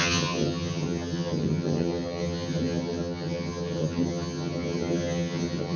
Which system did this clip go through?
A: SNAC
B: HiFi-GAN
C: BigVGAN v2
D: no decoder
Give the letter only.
B